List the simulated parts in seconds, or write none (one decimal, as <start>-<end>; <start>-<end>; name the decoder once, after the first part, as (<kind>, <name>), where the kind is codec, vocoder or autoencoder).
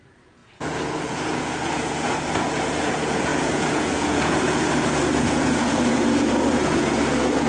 0.0-7.5 (vocoder, Vocos)